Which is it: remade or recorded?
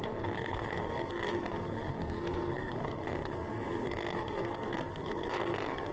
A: remade